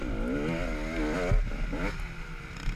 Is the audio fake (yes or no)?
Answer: no